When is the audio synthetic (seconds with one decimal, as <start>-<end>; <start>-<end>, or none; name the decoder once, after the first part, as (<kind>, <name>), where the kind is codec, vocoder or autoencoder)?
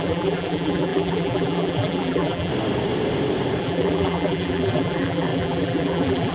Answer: 0.0-2.5 (vocoder, BigVGAN v2); 3.6-6.3